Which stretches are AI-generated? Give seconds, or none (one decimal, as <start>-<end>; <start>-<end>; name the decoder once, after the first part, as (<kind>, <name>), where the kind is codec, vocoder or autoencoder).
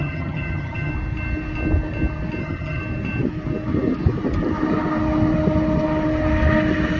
0.0-0.9 (vocoder, HiFi-GAN); 2.4-2.8